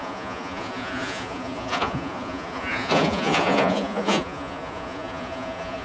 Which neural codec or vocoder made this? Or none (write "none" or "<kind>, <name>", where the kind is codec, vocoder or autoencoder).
vocoder, Vocos